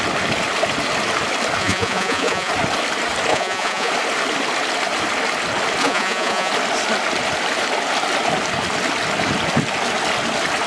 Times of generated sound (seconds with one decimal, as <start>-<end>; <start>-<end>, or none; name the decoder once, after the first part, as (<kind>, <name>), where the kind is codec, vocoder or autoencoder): 1.6-2.5 (vocoder, Vocos); 3.3-3.9; 5.8-6.5